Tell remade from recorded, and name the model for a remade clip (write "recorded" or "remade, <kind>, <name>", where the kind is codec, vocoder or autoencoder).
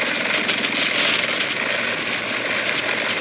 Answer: recorded